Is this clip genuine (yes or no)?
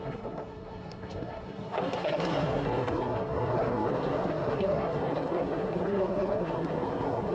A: no